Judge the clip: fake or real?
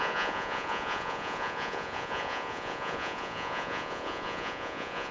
fake